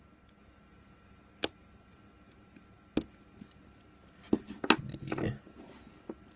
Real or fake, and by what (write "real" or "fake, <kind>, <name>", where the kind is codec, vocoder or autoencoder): real